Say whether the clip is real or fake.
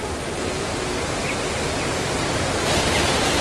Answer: real